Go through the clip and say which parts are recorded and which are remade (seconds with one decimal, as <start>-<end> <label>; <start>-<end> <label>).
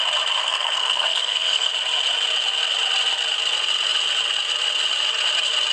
0.0-0.4 recorded; 0.4-1.7 remade; 1.7-5.7 recorded